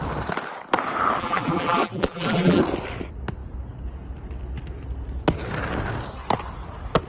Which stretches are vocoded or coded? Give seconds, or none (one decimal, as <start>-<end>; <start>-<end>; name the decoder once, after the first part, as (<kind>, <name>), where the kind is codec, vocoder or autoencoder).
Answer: 1.2-2.6 (vocoder, BigVGAN v2)